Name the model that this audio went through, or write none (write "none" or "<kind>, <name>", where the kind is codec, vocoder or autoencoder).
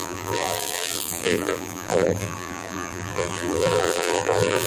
vocoder, BigVGAN v2